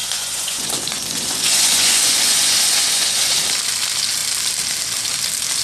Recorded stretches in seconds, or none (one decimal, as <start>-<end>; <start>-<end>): 3.4-5.6